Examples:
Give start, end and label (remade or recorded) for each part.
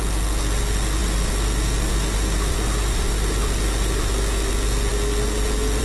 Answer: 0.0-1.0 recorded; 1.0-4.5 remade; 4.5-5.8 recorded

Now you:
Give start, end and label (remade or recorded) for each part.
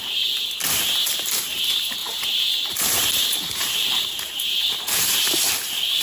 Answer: 0.0-1.0 recorded; 1.0-1.6 remade; 1.6-2.0 recorded; 2.0-5.0 remade; 5.0-6.0 recorded